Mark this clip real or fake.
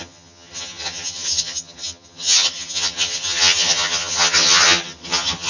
fake